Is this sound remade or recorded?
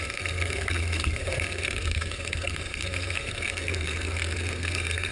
remade